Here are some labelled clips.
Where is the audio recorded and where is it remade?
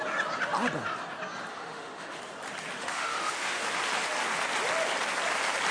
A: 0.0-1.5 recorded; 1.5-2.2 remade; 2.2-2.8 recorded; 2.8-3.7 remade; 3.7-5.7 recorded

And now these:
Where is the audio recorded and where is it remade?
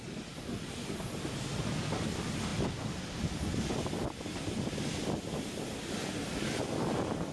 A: 0.0-7.3 recorded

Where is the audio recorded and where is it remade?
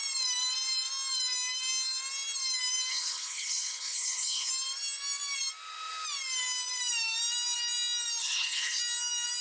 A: 0.0-2.9 recorded; 2.9-4.5 remade; 4.5-8.2 recorded; 8.2-8.8 remade; 8.8-9.4 recorded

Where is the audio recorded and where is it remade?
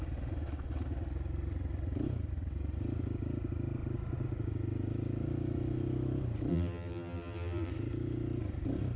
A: 0.0-6.5 recorded; 6.5-7.7 remade; 7.7-9.0 recorded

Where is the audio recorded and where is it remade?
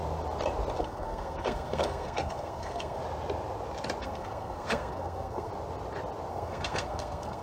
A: 0.0-0.8 recorded; 0.8-3.0 remade; 3.0-4.0 recorded; 4.0-5.5 remade; 5.5-6.3 recorded; 6.3-7.4 remade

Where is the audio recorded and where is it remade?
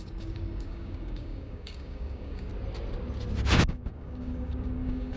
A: 0.0-2.5 remade; 2.5-3.6 recorded; 3.6-5.2 remade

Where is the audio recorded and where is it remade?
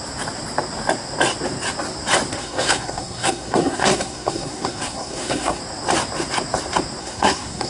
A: 0.0-2.4 recorded; 2.4-5.6 remade; 5.6-7.0 recorded; 7.0-7.7 remade